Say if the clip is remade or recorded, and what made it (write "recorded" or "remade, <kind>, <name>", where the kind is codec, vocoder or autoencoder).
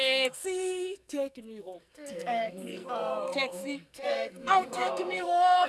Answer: remade, codec, SNAC